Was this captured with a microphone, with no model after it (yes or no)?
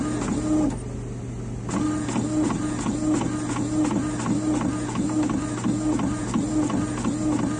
yes